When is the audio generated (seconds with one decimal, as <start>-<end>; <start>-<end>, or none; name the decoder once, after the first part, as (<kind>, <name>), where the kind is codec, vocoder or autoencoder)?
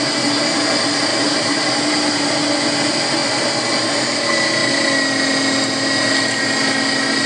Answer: 1.1-2.4 (vocoder, BigVGAN v2); 3.2-3.9